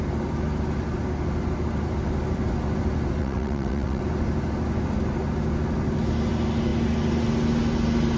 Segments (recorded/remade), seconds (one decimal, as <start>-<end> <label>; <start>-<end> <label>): 0.0-3.2 recorded; 3.2-4.0 remade; 4.0-8.2 recorded